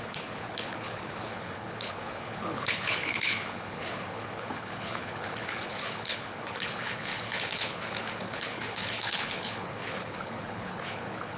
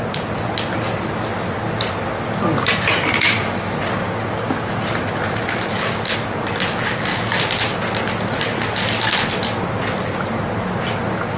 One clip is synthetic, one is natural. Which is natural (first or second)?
second